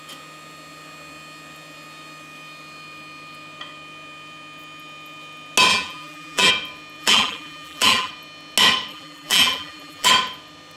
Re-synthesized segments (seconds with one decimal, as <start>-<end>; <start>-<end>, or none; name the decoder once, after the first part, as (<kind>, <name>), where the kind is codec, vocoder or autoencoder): 5.7-6.5 (vocoder, BigVGAN v2); 7.0-8.1; 8.9-10.1